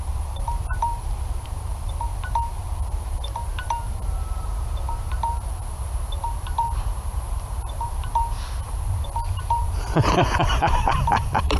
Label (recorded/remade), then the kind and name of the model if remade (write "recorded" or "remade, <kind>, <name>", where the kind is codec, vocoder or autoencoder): remade, vocoder, BigVGAN v2